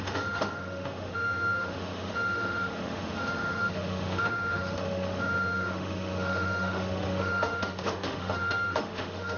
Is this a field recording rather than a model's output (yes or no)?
no